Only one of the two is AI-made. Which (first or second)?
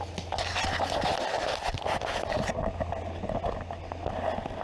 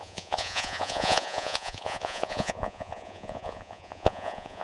second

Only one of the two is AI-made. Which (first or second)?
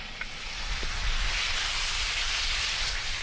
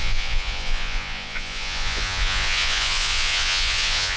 second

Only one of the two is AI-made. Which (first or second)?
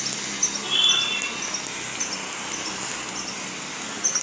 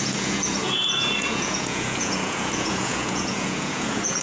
second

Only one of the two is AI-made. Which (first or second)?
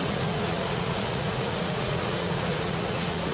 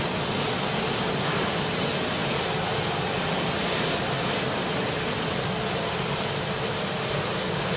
first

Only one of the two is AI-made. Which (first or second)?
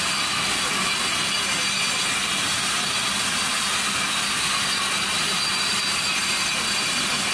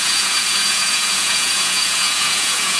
second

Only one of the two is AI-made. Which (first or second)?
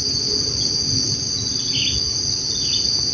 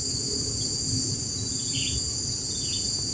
second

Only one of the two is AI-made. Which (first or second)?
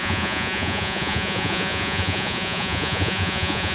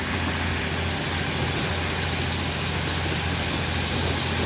first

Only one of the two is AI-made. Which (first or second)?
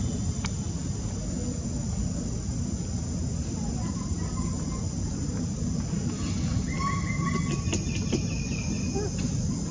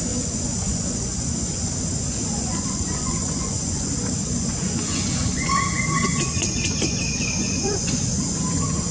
second